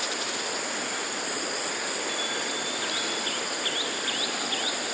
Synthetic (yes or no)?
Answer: no